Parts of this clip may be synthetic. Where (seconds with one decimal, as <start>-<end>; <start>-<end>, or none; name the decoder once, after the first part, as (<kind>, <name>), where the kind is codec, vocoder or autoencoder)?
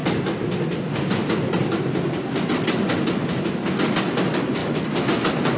none